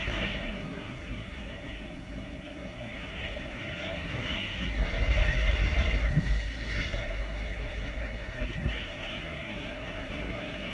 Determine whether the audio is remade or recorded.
remade